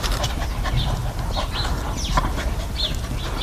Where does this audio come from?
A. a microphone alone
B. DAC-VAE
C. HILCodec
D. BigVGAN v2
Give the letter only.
A